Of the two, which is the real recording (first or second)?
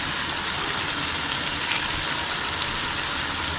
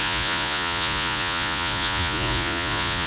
first